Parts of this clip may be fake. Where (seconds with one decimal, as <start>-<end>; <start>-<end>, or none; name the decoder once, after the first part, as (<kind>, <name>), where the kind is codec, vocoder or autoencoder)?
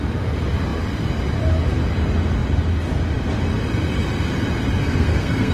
4.8-5.5 (codec, SNAC)